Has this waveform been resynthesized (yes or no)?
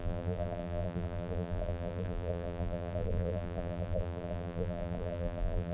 yes